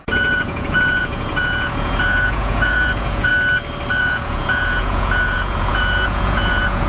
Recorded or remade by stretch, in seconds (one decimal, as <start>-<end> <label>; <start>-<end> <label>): 0.0-3.3 remade; 3.3-4.0 recorded; 4.0-6.9 remade